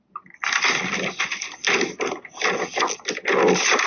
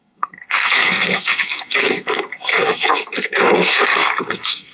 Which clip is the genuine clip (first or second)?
first